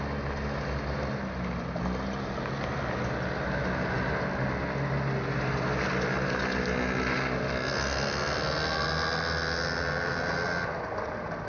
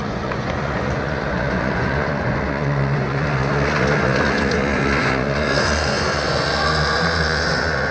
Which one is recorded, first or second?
first